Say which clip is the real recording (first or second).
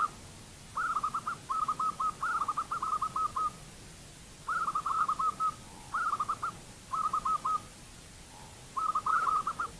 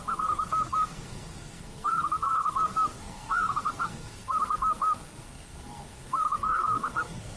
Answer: first